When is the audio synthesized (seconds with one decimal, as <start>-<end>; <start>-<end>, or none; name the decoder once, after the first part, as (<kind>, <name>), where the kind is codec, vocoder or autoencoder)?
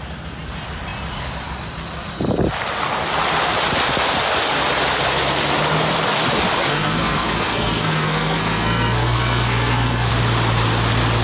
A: 6.6-10.1 (codec, SNAC)